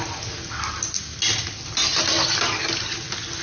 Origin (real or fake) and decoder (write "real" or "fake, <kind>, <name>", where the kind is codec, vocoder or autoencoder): real